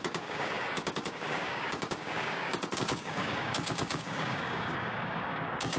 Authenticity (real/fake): fake